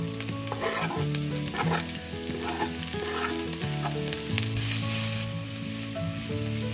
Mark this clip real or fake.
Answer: real